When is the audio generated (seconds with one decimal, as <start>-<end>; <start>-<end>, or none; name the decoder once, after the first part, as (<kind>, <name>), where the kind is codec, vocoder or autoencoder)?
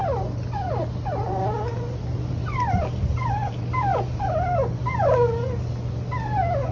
1.7-2.8 (vocoder, BigVGAN v2); 3.9-4.8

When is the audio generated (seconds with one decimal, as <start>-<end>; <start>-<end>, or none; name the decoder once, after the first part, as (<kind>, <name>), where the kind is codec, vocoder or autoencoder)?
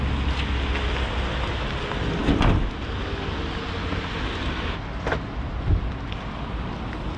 none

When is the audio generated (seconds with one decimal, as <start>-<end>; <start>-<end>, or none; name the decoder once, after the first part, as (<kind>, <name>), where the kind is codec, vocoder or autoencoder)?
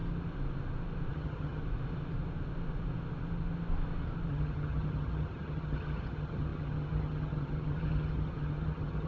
1.1-1.6 (vocoder, HiFi-GAN); 4.3-9.1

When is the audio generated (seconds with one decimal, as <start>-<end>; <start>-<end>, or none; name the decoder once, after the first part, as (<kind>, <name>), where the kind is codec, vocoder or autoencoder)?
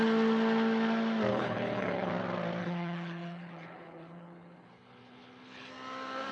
1.3-2.1 (codec, HILCodec); 2.6-5.7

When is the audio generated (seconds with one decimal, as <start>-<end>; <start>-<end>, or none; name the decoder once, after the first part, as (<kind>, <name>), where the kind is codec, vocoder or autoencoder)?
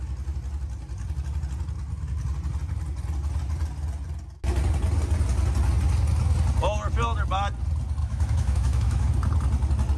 8.0-9.1 (autoencoder, DAC-VAE)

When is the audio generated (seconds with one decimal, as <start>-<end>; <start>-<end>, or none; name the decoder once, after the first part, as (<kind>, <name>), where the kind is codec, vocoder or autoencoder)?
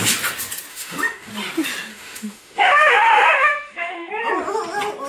0.7-1.3 (autoencoder, DAC-VAE); 1.9-4.1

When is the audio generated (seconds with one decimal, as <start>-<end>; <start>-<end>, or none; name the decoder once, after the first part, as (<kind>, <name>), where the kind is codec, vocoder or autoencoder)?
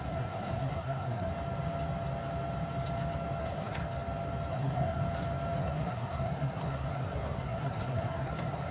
0.0-1.3 (codec, SNAC); 3.4-3.8; 4.5-5.0; 5.6-8.7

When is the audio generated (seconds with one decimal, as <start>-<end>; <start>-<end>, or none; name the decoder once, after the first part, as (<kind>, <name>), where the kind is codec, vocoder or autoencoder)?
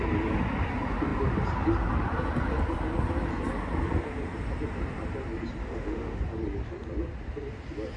5.6-6.2 (autoencoder, DAC-VAE)